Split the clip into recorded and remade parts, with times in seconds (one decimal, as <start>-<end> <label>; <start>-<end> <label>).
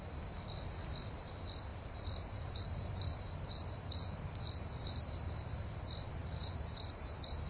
0.0-1.7 recorded; 1.7-4.4 remade; 4.4-6.2 recorded; 6.2-7.0 remade; 7.0-7.5 recorded